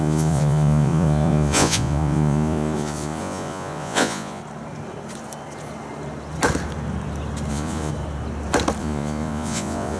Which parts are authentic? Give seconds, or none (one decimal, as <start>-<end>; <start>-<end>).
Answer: 4.4-7.5; 7.9-8.8